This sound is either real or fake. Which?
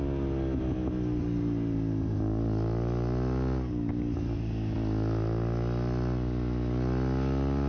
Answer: real